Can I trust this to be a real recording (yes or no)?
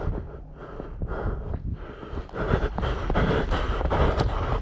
yes